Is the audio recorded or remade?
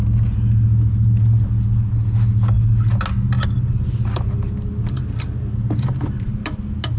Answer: recorded